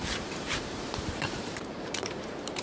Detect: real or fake fake